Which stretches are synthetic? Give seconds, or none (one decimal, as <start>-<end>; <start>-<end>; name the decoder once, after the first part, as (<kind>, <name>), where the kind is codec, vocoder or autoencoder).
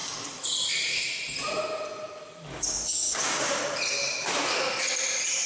2.5-3.6 (codec, DAC)